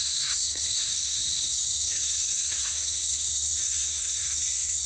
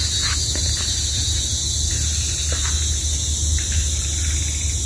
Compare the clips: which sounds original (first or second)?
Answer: second